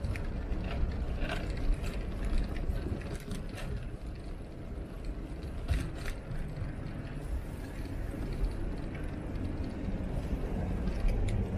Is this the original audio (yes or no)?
yes